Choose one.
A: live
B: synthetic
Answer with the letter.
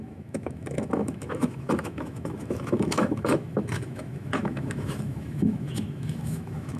B